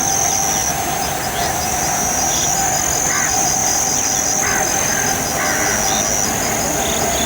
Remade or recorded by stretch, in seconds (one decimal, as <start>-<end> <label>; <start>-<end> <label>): 0.0-0.6 recorded; 0.6-2.5 remade; 2.5-7.3 recorded